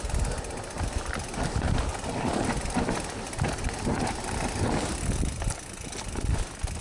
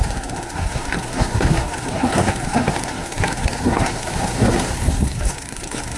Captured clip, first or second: first